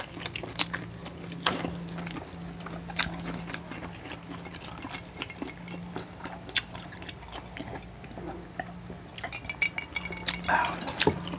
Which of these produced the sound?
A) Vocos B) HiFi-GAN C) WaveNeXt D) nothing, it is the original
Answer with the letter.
D